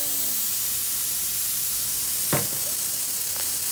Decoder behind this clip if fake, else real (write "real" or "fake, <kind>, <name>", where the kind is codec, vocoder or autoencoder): real